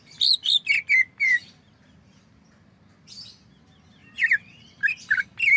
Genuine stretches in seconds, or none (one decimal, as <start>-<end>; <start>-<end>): 0.0-0.4; 3.0-4.0; 4.8-5.6

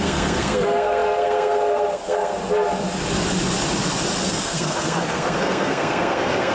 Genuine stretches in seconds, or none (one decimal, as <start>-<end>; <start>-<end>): 2.4-4.2

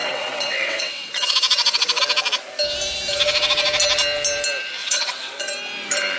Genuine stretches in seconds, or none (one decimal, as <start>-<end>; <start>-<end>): 2.0-4.8; 5.5-6.2

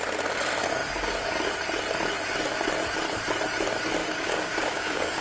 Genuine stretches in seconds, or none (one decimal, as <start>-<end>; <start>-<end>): 0.0-4.0

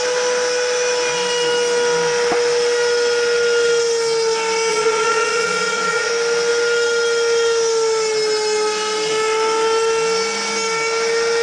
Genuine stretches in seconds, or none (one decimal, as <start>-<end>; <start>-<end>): 0.0-4.7; 6.1-11.4